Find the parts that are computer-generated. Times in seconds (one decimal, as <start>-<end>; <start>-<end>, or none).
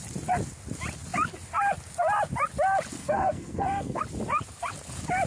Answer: 3.0-4.0